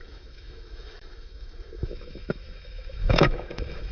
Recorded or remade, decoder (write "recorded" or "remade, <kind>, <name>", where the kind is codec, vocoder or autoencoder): remade, autoencoder, DAC-VAE